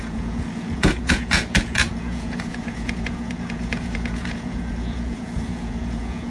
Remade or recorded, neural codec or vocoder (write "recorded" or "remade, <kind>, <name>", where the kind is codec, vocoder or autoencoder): remade, vocoder, Vocos